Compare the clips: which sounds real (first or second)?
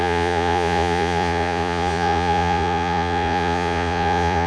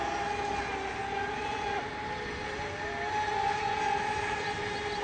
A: second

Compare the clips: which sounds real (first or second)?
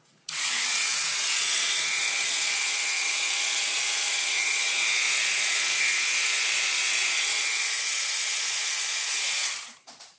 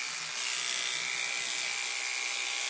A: second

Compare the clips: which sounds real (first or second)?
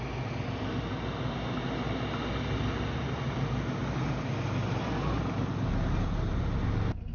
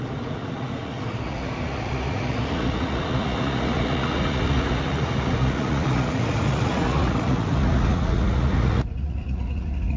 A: first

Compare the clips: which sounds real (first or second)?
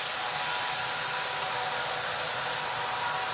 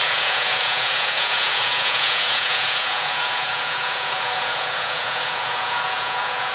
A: first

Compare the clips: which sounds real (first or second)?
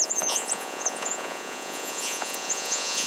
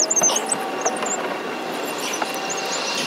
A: second